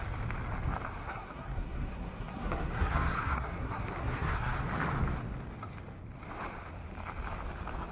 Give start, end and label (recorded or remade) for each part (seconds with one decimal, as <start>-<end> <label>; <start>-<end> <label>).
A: 0.0-1.0 recorded; 1.0-4.5 remade; 4.5-7.9 recorded